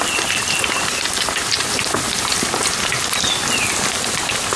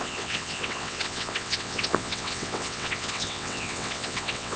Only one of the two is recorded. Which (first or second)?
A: first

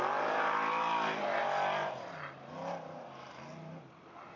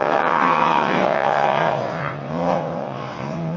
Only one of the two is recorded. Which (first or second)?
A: first